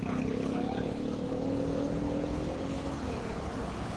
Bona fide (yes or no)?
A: no